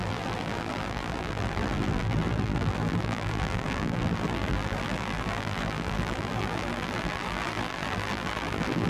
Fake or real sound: fake